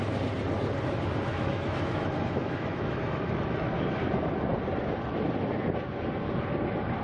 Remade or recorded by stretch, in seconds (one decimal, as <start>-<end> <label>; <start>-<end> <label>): 0.0-1.3 recorded; 1.3-3.7 remade; 3.7-7.0 recorded